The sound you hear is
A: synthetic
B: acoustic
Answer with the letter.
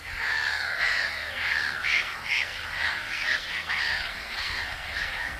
A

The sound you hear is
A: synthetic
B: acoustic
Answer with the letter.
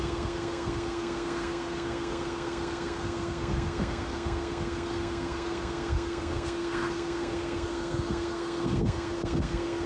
A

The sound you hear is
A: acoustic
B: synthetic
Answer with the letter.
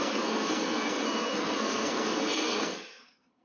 B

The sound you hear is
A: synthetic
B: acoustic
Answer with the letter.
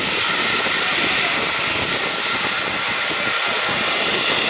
B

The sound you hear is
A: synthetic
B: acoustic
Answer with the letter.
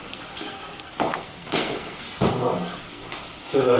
A